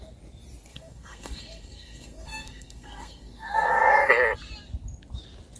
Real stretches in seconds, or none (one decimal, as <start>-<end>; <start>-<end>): 0.0-0.7; 4.1-5.6